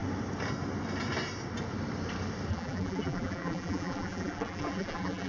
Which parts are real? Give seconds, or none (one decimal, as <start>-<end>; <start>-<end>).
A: 0.0-2.5